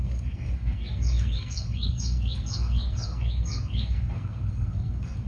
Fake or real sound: fake